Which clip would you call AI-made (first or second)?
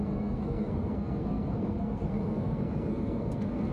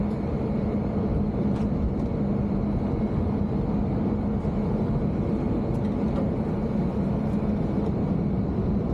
first